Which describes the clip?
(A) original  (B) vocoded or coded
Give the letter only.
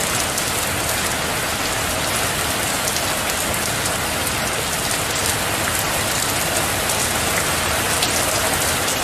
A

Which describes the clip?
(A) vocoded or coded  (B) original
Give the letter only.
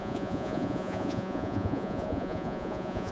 A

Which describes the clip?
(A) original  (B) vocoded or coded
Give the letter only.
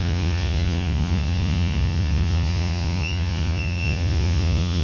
B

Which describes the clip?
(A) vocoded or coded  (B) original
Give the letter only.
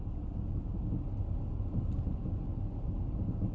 B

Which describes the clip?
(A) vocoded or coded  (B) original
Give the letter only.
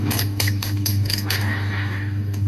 A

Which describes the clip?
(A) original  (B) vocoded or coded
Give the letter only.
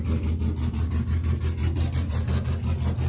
A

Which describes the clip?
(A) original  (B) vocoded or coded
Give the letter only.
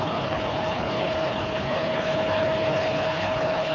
B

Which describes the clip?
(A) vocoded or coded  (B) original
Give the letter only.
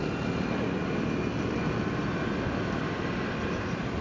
B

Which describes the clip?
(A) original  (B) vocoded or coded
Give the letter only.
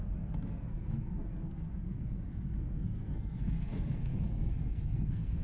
B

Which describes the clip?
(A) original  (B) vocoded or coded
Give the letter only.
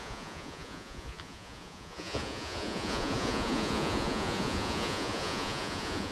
B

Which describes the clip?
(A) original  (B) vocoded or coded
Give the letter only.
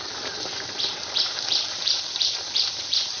B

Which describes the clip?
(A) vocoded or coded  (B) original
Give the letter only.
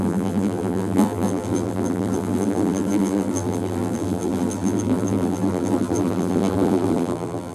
A